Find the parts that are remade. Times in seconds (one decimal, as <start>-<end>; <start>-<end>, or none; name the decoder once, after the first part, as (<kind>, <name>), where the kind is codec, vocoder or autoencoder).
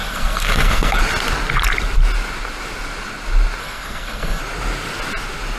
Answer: 0.0-1.0 (codec, SNAC); 3.6-4.4